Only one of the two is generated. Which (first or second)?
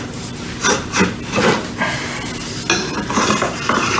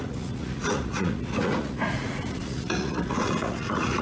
second